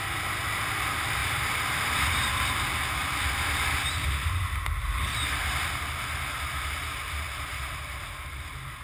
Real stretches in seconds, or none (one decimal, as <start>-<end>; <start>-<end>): 0.0-1.2; 2.1-3.0; 3.7-8.8

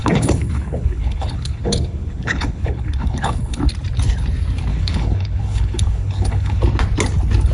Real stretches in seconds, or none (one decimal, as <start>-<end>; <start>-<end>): 3.6-4.7; 6.6-7.5

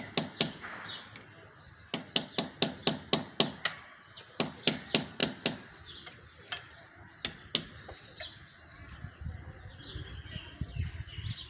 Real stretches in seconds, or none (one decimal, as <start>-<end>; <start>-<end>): 0.0-11.5

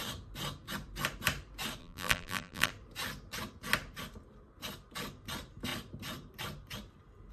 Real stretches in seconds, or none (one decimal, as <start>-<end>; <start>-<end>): 0.0-1.8; 2.7-7.3

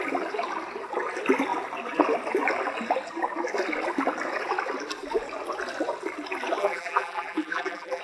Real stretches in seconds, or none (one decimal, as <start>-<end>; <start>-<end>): 0.0-6.6